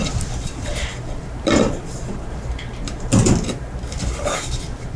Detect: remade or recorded recorded